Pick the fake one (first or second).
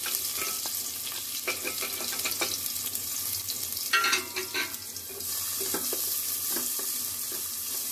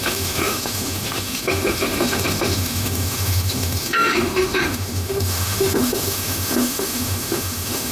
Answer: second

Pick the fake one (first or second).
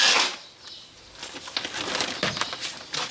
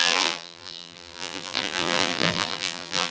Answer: second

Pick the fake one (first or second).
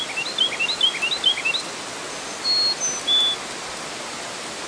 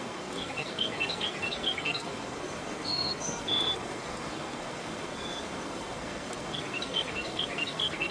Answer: second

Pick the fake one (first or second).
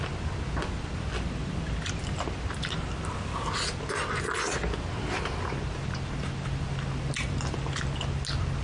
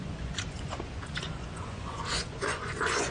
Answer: second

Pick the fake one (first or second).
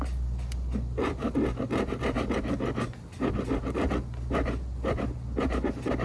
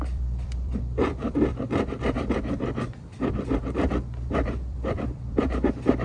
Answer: second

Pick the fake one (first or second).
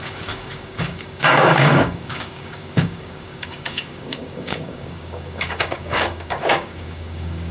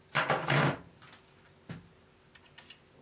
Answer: first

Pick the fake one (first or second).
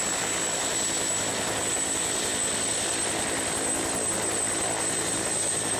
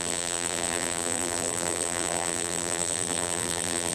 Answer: second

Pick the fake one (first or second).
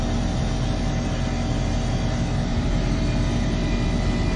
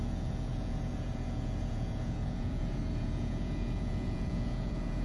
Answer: second